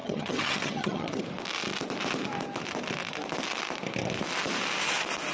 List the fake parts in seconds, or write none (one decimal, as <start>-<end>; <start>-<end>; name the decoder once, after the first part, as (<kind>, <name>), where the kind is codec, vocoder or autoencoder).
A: 0.0-1.2 (vocoder, HiFi-GAN)